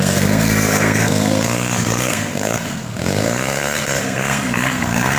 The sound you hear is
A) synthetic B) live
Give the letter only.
A